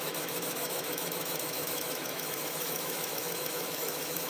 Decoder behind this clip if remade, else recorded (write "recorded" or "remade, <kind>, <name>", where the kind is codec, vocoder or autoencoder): remade, autoencoder, DAC-VAE